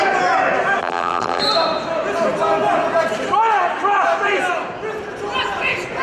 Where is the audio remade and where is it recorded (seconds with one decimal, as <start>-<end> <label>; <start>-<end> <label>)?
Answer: 0.0-0.8 recorded; 0.8-1.4 remade; 1.4-6.0 recorded